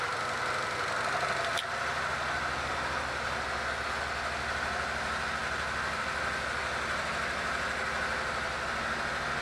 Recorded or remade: recorded